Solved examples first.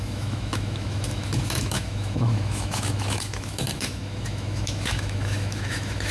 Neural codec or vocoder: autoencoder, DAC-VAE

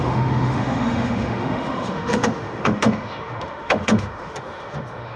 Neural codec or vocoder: autoencoder, DAC-VAE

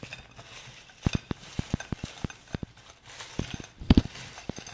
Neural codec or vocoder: none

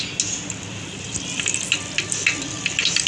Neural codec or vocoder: none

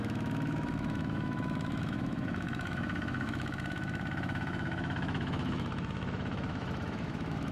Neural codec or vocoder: autoencoder, DAC-VAE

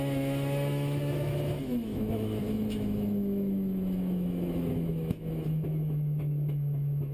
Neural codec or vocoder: autoencoder, DAC-VAE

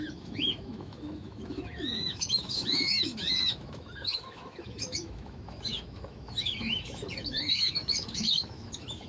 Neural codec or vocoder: autoencoder, DAC-VAE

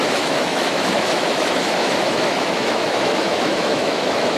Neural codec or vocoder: autoencoder, DAC-VAE